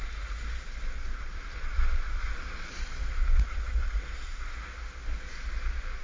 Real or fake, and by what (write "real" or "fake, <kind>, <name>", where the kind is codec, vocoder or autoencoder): real